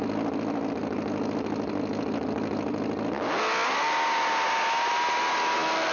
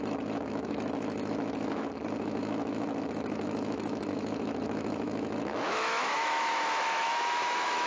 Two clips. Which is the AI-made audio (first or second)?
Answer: second